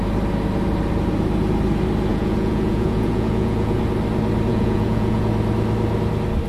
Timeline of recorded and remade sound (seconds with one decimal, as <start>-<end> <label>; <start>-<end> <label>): 0.0-2.1 recorded; 2.1-3.8 remade; 3.8-4.5 recorded; 4.5-5.2 remade; 5.2-6.5 recorded